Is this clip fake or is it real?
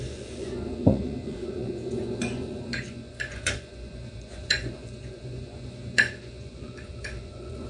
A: fake